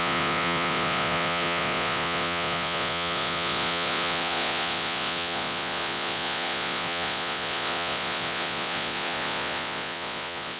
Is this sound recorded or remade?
remade